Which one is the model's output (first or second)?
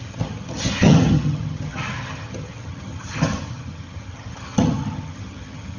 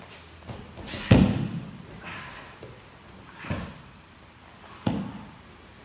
first